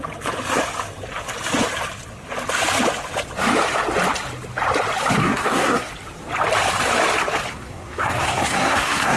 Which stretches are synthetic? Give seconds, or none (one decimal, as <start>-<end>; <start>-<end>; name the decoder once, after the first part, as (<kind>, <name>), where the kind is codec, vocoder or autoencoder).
5.2-5.9 (codec, SNAC); 7.5-9.2